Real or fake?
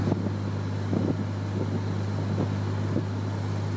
real